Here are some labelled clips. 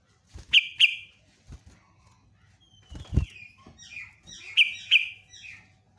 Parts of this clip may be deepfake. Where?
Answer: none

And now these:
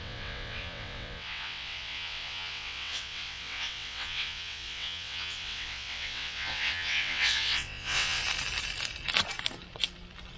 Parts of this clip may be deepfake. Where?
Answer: 0.0-8.2 (vocoder, WaveNeXt)